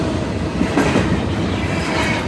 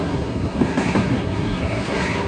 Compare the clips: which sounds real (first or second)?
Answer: first